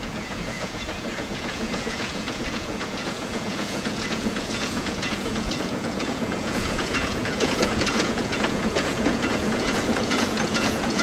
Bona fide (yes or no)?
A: no